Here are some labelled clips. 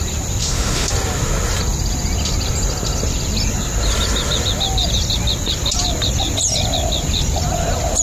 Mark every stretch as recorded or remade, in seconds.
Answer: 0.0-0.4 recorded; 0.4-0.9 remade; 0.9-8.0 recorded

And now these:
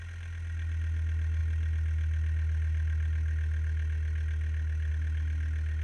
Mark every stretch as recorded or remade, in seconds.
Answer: 0.0-5.8 recorded